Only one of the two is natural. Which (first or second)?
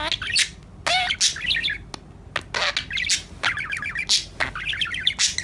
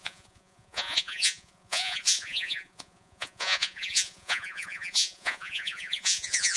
first